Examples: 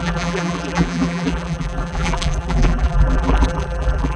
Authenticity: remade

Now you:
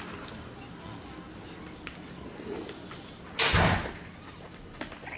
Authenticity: recorded